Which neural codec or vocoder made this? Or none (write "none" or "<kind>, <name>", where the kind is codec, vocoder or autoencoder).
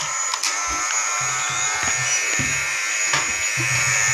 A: none